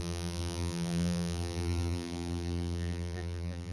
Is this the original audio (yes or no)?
no